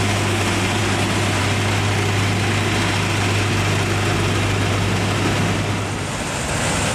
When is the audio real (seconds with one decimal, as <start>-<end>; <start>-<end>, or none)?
0.0-6.9